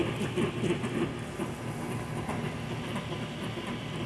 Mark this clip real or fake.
real